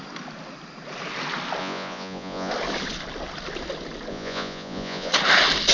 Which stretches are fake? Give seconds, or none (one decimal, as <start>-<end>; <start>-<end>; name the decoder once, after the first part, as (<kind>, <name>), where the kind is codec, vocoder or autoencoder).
1.6-2.5 (vocoder, Vocos); 4.1-5.1